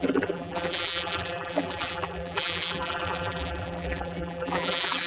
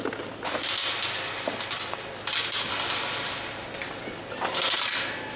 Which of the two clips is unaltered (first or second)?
second